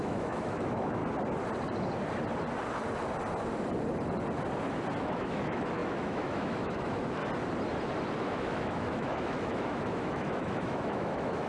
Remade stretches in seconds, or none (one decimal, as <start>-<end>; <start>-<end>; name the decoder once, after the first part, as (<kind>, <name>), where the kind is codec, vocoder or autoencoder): 0.0-1.0 (autoencoder, DAC-VAE); 5.0-7.2; 8.2-11.5